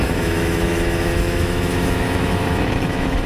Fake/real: fake